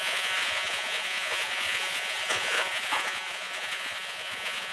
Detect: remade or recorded remade